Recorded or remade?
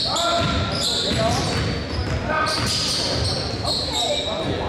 recorded